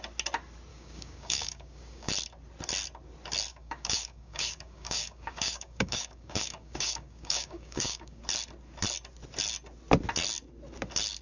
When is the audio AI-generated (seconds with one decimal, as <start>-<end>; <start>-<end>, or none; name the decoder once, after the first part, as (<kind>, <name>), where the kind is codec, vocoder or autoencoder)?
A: 0.7-2.1 (codec, DAC); 3.5-8.2

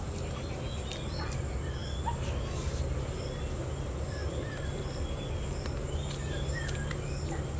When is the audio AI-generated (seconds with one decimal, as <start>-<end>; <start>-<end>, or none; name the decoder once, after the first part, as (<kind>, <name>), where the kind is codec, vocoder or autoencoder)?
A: none